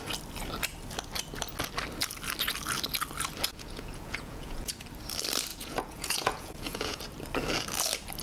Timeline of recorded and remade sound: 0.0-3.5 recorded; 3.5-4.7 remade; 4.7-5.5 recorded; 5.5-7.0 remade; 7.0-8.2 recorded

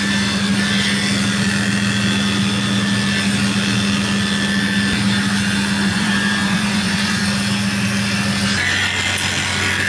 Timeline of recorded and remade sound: 0.0-5.9 recorded; 5.9-7.2 remade; 7.2-9.9 recorded

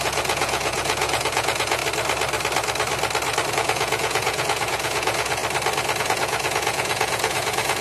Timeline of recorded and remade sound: 0.0-1.8 remade; 1.8-3.5 recorded; 3.5-5.4 remade; 5.4-6.0 recorded; 6.0-7.8 remade

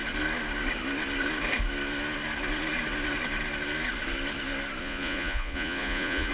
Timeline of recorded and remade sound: 0.0-4.8 recorded; 4.8-6.3 remade